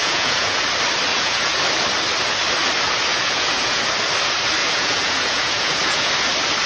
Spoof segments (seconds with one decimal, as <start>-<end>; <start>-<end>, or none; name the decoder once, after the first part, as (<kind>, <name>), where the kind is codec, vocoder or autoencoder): 0.0-0.6 (vocoder, Vocos); 1.1-1.6; 3.1-3.8; 4.6-6.1